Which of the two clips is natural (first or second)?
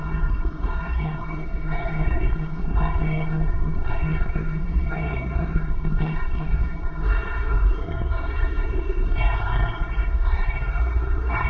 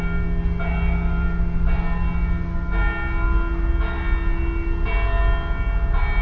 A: second